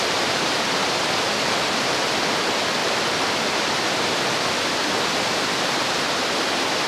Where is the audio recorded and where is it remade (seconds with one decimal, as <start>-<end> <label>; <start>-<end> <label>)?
0.0-6.9 remade